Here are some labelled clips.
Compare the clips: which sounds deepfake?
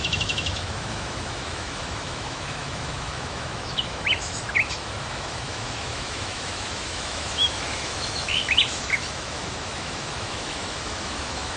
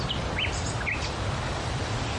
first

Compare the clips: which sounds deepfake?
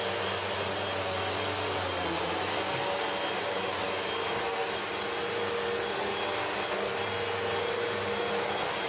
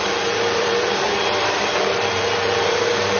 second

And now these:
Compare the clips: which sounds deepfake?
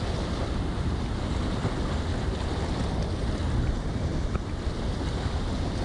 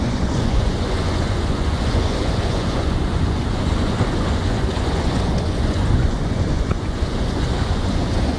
second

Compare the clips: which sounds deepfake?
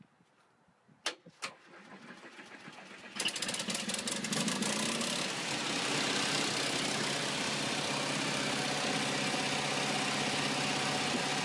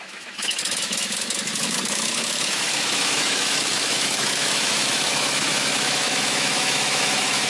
second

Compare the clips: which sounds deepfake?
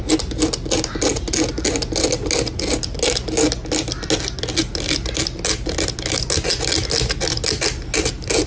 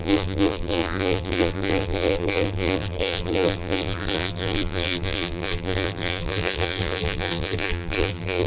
second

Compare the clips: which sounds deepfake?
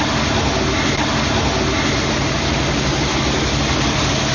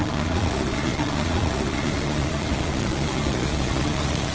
second